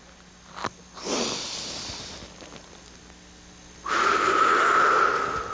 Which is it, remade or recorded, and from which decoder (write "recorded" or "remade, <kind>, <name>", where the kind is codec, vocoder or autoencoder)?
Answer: recorded